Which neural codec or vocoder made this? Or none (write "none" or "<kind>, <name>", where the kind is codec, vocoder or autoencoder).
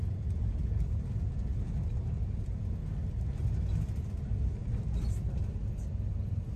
none